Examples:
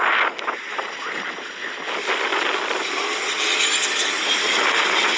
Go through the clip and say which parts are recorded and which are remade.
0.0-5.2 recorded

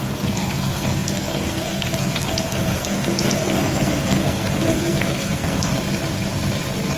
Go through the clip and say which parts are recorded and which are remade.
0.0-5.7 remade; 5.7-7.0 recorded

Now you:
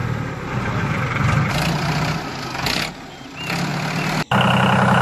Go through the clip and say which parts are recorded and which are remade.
0.0-2.2 remade; 2.2-5.0 recorded

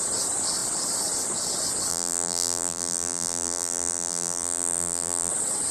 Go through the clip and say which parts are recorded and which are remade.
0.0-1.9 recorded; 1.9-5.3 remade; 5.3-5.7 recorded